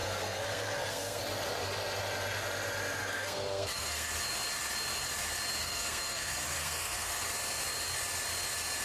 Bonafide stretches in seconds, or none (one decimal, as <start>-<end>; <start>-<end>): 1.2-3.0; 4.1-5.6; 7.2-8.8